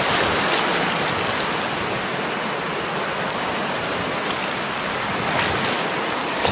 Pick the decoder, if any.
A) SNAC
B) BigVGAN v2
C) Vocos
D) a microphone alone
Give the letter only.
D